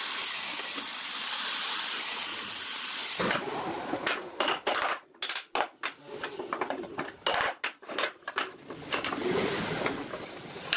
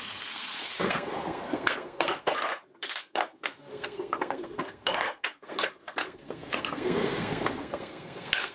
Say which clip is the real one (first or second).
first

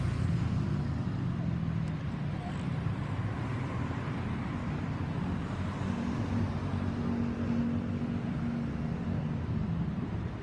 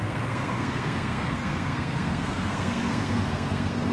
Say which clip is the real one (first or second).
first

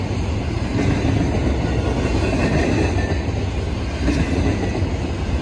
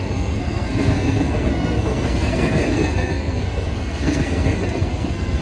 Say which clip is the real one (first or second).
first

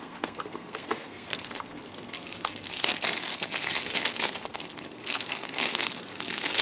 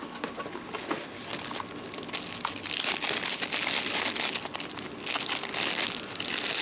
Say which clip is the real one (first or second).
second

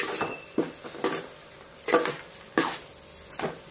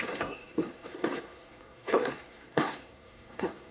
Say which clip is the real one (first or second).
first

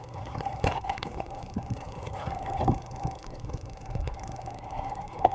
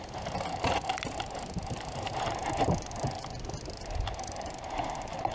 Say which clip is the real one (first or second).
second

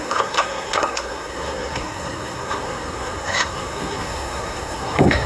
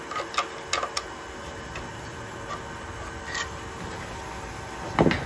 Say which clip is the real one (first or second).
second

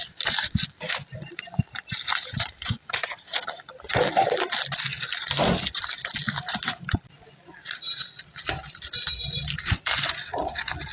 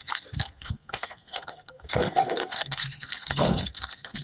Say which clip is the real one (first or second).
first